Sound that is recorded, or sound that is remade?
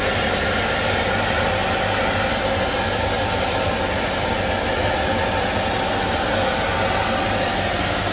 recorded